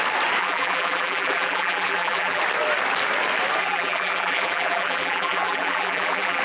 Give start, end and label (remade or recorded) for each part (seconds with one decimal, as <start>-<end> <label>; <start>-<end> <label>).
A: 0.0-0.4 recorded; 0.4-2.4 remade; 2.4-3.6 recorded; 3.6-6.4 remade